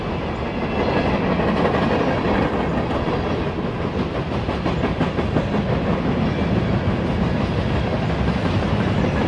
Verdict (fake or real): real